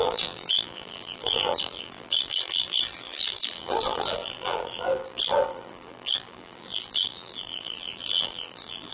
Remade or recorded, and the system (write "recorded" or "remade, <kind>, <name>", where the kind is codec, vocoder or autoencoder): remade, vocoder, BigVGAN v2